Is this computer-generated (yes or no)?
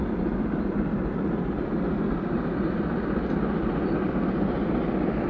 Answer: no